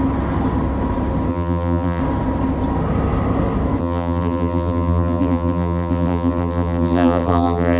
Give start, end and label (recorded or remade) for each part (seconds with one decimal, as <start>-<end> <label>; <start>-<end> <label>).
0.0-1.3 recorded; 1.3-2.0 remade; 2.0-3.8 recorded; 3.8-7.8 remade